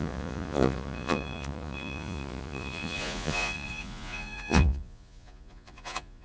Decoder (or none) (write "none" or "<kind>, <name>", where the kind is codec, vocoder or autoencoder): vocoder, Vocos